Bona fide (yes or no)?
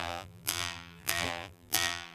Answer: no